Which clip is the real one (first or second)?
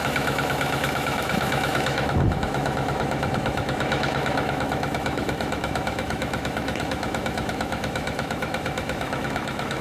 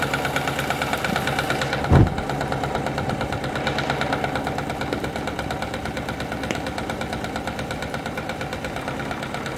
second